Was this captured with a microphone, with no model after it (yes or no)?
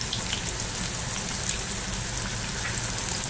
yes